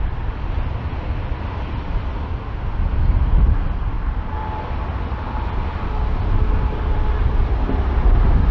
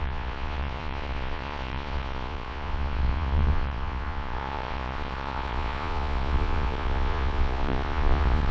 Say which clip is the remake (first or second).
second